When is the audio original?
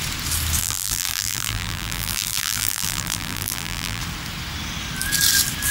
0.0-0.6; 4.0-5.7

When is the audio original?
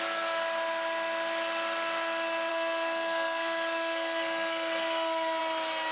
0.0-2.5; 5.4-5.9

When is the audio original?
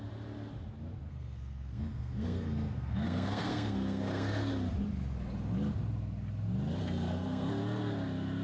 0.0-1.1; 4.5-6.8; 7.5-8.4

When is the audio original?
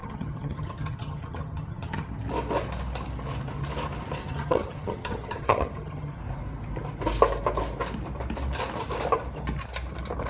2.1-4.2; 6.2-10.3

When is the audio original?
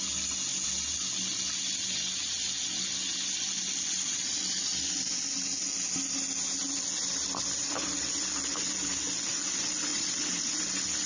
0.0-9.9; 10.6-11.1